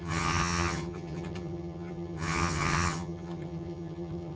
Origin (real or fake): fake